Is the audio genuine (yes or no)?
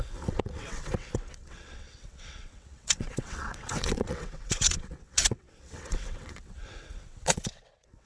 no